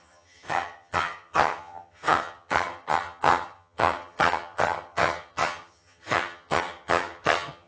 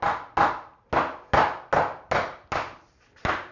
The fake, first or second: first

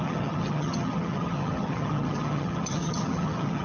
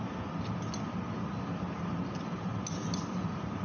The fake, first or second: first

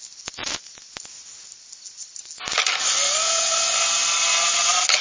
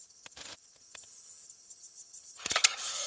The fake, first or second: second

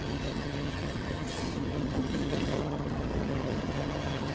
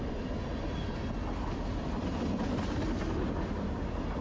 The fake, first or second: first